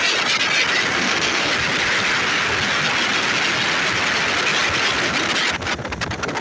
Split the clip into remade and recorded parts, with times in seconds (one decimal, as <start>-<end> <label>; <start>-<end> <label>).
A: 0.0-0.9 recorded; 0.9-1.5 remade; 1.5-6.4 recorded